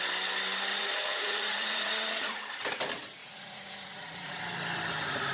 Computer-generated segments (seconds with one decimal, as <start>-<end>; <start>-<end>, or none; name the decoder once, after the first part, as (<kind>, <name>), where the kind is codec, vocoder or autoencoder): 0.7-2.4 (vocoder, Vocos); 3.2-4.4